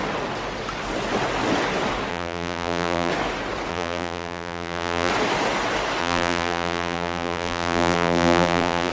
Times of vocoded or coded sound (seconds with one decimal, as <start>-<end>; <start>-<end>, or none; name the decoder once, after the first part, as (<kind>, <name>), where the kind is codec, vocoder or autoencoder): 2.1-3.1 (vocoder, BigVGAN v2); 3.7-5.1; 6.0-8.9